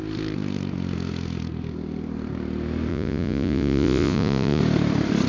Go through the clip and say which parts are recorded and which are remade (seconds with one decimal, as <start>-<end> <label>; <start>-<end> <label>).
0.0-2.9 recorded; 2.9-4.6 remade; 4.6-5.3 recorded